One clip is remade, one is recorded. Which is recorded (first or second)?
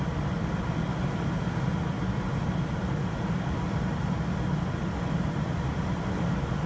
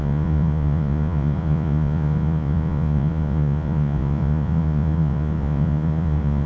first